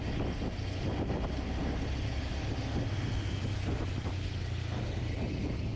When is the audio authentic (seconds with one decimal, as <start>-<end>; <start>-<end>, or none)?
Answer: 0.0-5.8